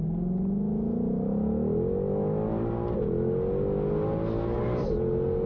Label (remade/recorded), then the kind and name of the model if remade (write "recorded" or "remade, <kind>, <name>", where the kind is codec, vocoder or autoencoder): recorded